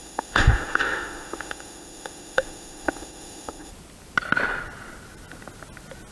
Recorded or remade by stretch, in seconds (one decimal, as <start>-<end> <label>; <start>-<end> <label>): 0.0-3.7 remade; 3.7-6.1 recorded